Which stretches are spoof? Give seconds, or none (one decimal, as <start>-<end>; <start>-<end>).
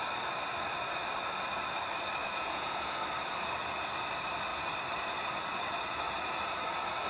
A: 2.2-3.0